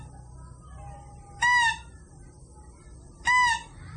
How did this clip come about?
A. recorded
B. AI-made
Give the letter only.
A